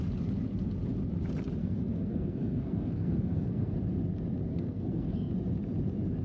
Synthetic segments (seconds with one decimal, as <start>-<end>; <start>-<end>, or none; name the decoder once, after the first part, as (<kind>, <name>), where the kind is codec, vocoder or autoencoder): 1.6-3.8 (codec, SNAC); 4.5-5.3